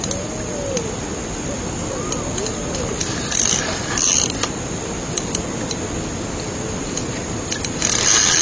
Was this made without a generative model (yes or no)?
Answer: yes